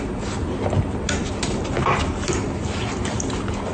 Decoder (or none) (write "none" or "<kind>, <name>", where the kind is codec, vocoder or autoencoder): vocoder, BigVGAN v2